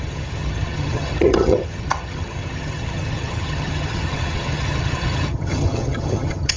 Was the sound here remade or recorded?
remade